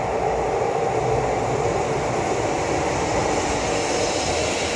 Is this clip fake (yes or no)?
no